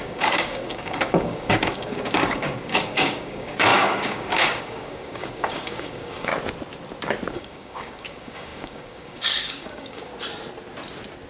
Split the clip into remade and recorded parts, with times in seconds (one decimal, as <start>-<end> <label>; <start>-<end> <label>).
0.0-6.3 remade; 6.3-7.3 recorded; 7.3-10.1 remade; 10.1-11.3 recorded